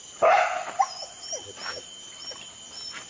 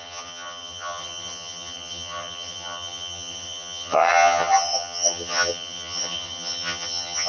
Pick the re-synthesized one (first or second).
second